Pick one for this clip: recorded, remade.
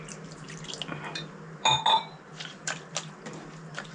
recorded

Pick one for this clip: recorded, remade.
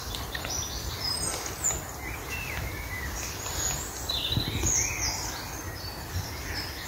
recorded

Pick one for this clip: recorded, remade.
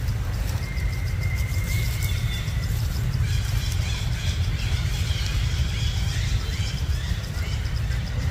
recorded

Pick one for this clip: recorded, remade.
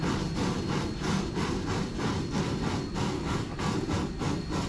remade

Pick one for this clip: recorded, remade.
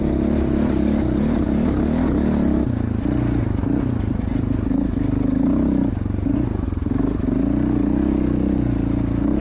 recorded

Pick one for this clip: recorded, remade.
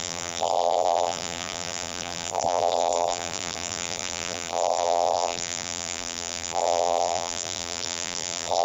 remade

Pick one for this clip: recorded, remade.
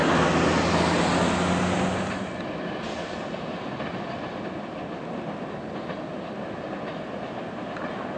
recorded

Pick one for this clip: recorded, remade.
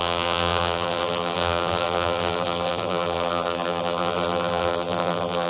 remade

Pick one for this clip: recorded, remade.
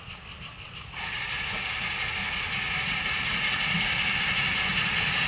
recorded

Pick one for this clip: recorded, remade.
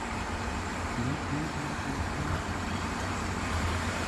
remade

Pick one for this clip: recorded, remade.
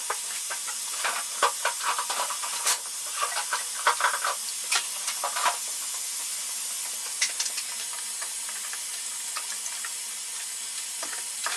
recorded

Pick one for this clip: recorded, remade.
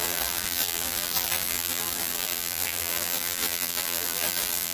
remade